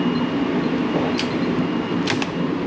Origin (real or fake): real